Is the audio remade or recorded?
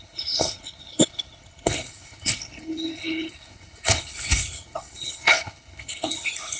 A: remade